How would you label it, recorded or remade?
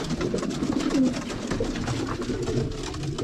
recorded